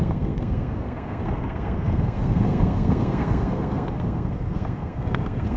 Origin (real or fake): fake